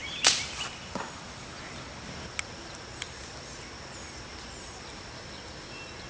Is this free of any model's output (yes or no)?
yes